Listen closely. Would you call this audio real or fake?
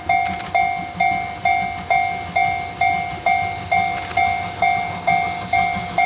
real